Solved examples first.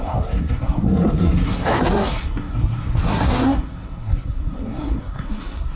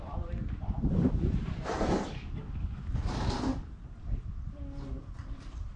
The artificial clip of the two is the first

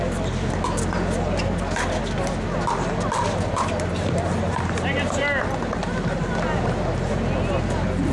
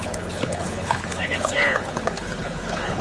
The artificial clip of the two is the second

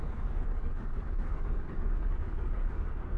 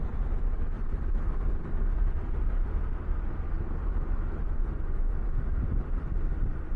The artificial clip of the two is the first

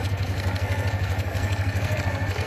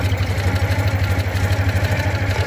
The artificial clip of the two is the first